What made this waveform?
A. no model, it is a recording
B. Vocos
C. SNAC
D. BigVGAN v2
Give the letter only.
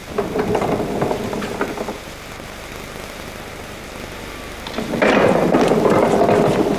A